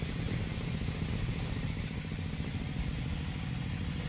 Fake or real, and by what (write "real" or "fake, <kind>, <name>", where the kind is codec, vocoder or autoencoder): real